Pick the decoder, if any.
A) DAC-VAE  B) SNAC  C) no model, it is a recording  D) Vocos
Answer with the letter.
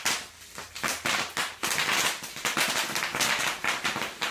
C